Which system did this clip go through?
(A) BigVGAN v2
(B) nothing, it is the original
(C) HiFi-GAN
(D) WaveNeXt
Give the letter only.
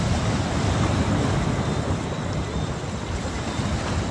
B